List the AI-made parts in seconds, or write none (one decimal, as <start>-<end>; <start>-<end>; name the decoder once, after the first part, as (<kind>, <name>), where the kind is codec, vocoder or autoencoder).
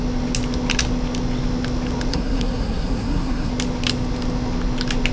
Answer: 2.1-3.5 (codec, SNAC)